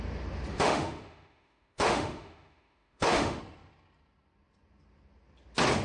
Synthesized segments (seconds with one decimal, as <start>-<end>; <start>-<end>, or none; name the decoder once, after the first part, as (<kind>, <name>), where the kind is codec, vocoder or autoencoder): 0.5-3.4 (autoencoder, DAC-VAE)